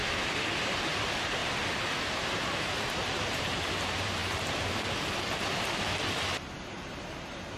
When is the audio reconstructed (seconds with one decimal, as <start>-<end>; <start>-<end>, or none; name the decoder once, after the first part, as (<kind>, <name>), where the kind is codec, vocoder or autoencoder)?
0.6-1.4 (vocoder, BigVGAN v2); 2.0-4.2; 6.7-7.6